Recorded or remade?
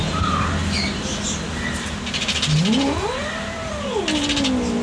recorded